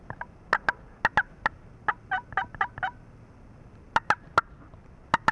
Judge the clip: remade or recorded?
recorded